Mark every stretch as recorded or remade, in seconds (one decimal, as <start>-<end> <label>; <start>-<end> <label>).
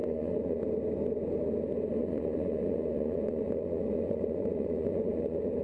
0.0-0.6 remade; 0.6-2.0 recorded; 2.0-5.6 remade